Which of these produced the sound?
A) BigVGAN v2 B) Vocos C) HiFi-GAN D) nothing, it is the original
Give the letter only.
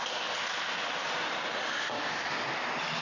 D